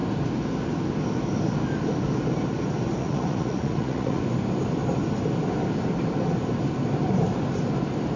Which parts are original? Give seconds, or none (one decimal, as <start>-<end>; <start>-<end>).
0.0-3.0; 4.2-8.2